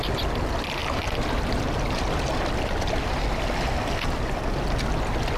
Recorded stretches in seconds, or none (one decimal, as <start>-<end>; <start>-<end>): 0.0-5.4